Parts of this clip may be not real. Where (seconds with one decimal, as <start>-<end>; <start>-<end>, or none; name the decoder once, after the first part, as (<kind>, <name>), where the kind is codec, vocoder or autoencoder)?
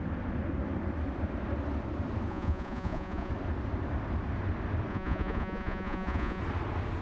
2.3-3.3 (vocoder, Vocos); 4.9-6.4